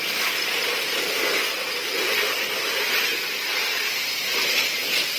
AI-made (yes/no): no